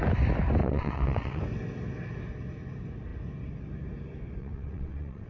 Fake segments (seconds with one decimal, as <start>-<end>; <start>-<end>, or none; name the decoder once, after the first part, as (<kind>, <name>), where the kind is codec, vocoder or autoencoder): 0.6-1.4 (vocoder, WaveNeXt); 4.4-5.3